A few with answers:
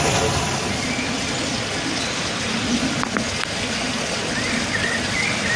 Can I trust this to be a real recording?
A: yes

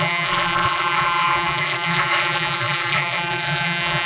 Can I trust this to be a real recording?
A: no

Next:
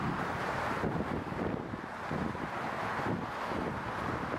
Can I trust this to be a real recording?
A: yes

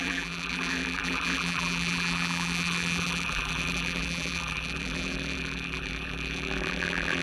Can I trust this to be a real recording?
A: no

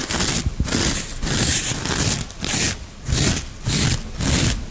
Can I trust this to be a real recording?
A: yes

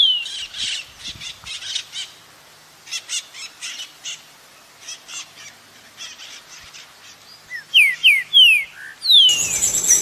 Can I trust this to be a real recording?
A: yes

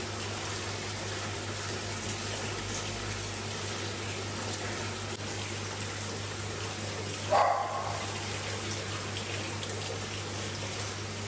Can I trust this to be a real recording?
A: yes